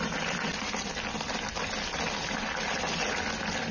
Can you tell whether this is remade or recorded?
recorded